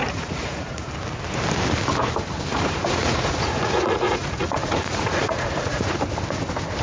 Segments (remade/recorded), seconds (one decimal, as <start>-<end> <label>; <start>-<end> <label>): 0.0-0.9 remade; 0.9-2.5 recorded; 2.5-6.0 remade; 6.0-6.8 recorded